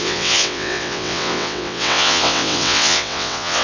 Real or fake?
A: fake